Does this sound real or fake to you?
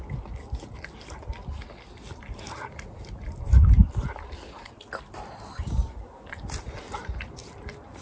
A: real